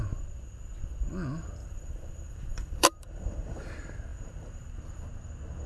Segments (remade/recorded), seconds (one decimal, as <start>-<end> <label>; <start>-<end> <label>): 0.0-1.6 recorded; 1.6-3.6 remade; 3.6-4.1 recorded; 4.1-4.7 remade; 4.7-5.7 recorded